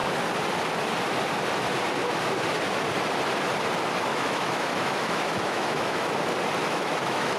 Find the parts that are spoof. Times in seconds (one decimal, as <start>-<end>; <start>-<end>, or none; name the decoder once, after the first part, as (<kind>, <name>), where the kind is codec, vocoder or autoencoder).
4.1-6.1 (autoencoder, DAC-VAE); 6.6-7.4